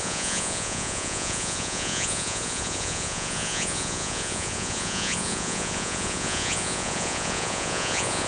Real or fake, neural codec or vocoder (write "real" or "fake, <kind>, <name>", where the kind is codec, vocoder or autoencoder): fake, vocoder, Vocos